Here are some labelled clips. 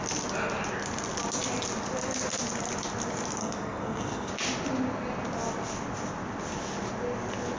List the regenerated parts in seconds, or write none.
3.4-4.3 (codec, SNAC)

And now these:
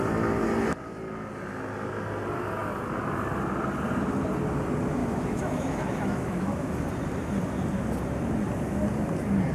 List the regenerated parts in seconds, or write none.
5.0-6.7 (autoencoder, DAC-VAE)